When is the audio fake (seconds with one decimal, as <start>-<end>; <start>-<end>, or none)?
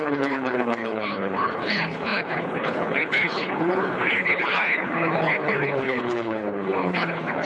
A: 0.0-7.5